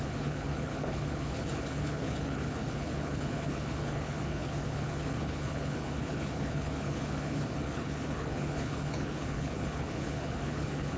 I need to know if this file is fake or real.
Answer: fake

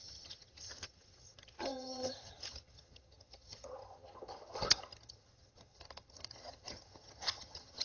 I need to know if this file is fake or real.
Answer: fake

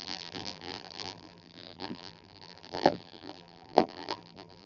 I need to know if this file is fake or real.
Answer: fake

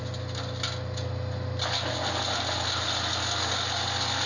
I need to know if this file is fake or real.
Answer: real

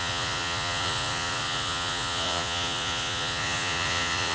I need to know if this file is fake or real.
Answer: fake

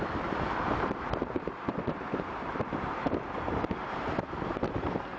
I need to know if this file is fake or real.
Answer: fake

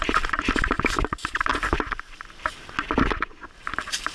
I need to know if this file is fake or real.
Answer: real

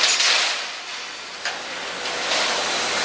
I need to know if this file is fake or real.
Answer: real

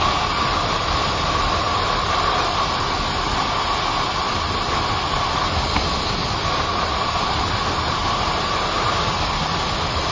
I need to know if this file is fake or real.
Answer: real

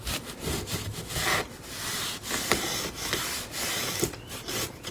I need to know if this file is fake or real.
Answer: real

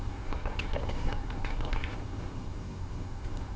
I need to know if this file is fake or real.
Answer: fake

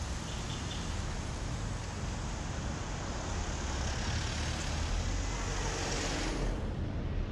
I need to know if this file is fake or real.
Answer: real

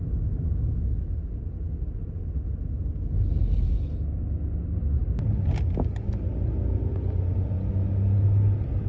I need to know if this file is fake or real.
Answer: real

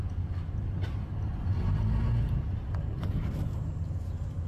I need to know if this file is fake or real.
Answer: real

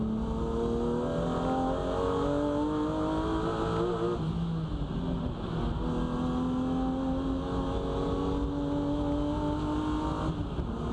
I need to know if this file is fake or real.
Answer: real